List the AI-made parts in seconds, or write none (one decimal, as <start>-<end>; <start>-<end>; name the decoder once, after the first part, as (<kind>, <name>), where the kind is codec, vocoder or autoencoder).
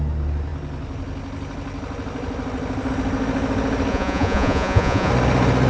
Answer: 3.9-5.1 (vocoder, Vocos)